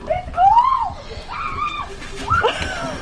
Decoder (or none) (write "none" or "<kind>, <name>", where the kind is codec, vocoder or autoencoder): none